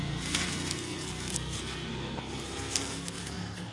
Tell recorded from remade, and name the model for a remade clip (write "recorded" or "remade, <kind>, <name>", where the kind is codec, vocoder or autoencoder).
remade, codec, SNAC